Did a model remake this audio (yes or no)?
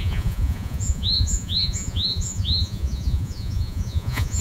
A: yes